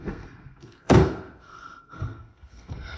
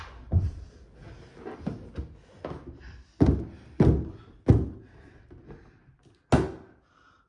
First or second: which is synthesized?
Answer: first